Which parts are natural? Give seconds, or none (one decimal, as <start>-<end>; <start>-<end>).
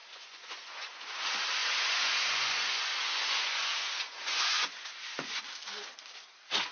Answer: 1.1-1.6; 5.4-6.7